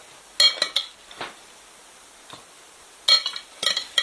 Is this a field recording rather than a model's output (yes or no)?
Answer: yes